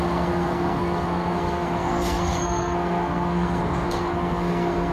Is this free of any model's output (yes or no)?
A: no